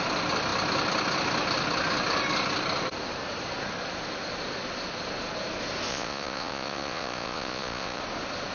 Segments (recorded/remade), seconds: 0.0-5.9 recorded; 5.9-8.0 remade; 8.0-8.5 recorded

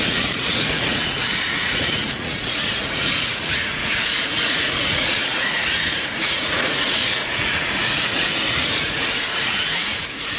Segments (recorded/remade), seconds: 0.0-10.4 remade

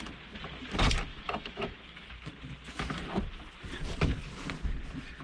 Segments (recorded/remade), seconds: 0.0-1.1 recorded; 1.1-2.1 remade; 2.1-5.2 recorded